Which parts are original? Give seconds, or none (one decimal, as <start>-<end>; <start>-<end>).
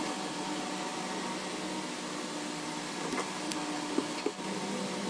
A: 0.0-5.1